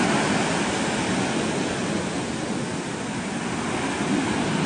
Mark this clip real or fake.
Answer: real